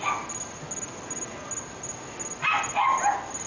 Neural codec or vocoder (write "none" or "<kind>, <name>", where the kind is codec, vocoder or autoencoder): none